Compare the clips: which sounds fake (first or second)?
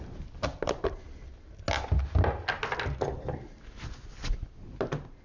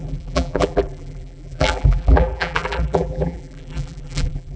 second